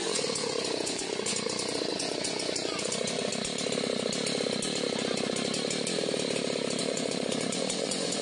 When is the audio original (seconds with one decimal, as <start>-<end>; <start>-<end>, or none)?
3.3-6.8